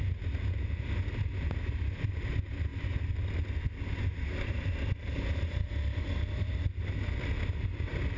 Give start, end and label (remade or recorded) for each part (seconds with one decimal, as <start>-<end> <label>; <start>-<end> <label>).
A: 0.0-8.2 recorded